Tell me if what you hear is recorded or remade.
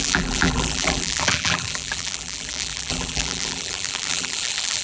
remade